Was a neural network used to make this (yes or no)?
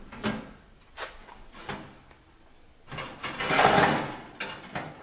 no